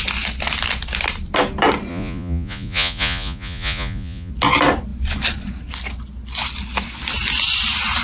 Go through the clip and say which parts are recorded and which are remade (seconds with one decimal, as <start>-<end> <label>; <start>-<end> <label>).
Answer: 0.0-1.9 recorded; 1.9-4.3 remade; 4.3-8.0 recorded